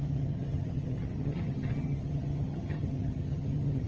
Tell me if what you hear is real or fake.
fake